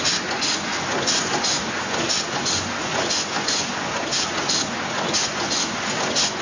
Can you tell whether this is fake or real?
fake